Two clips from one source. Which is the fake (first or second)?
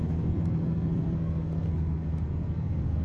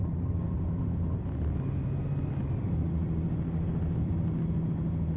first